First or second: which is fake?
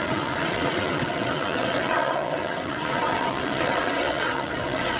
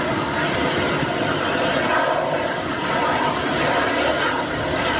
first